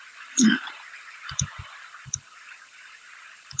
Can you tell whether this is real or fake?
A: fake